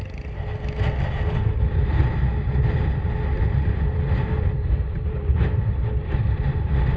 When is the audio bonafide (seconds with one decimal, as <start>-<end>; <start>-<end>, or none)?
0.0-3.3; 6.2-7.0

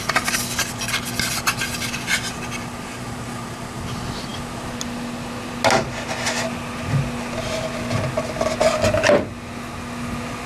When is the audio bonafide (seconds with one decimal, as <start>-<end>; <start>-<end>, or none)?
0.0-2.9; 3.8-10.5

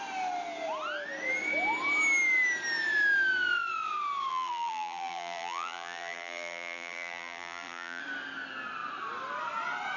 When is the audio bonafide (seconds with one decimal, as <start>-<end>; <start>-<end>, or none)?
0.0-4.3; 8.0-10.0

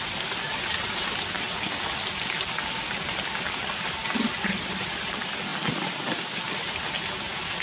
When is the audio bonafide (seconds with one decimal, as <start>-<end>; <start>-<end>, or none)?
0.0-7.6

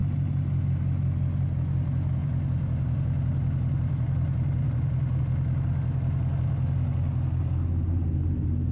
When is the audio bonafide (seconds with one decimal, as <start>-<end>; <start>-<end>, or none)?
0.0-2.2; 5.2-8.7

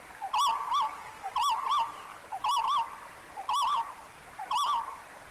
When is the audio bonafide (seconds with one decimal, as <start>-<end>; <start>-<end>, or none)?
0.0-0.9; 1.7-2.1

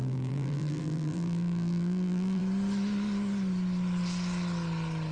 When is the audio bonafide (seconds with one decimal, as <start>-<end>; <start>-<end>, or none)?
2.4-5.1

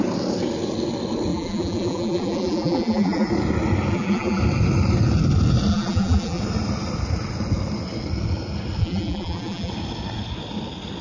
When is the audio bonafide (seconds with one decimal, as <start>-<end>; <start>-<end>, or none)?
0.0-1.3; 3.3-3.9; 4.4-5.7; 6.4-8.8; 9.7-11.0